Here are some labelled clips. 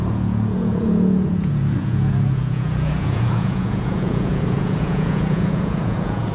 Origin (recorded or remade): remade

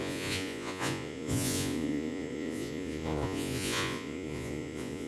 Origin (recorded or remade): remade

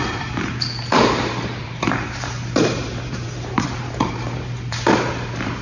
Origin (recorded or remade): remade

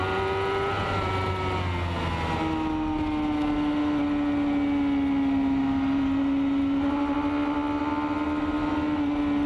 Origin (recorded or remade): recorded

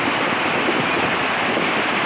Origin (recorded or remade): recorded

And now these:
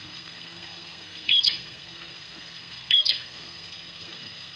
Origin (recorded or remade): remade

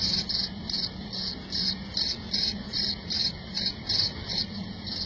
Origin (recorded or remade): recorded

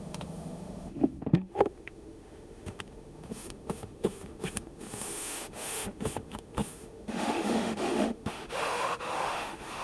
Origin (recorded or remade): remade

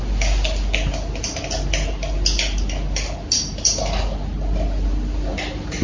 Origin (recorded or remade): recorded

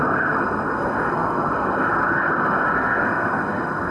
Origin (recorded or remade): remade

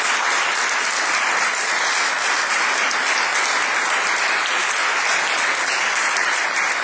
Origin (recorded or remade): recorded